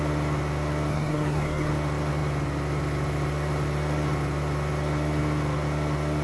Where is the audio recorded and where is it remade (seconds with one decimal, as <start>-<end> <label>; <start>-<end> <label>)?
0.0-0.9 recorded; 0.9-1.7 remade; 1.7-6.2 recorded

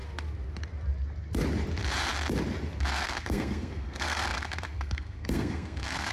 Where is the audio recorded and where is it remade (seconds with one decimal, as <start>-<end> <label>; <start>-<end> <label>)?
0.0-2.8 recorded; 2.8-6.1 remade

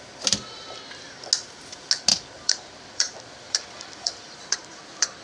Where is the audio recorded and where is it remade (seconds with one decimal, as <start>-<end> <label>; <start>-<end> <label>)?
0.0-2.1 recorded; 2.1-5.2 remade

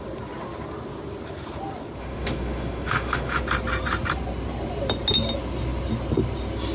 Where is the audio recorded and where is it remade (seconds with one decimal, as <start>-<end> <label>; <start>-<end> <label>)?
0.0-2.0 recorded; 2.0-3.4 remade; 3.4-6.7 recorded

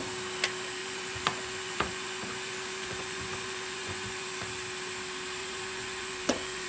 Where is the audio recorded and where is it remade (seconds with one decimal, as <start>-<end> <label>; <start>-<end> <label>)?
0.0-0.8 recorded; 0.8-4.4 remade; 4.4-5.4 recorded; 5.4-6.7 remade